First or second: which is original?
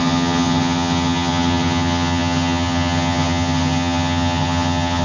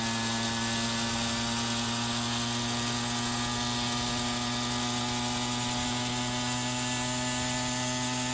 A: second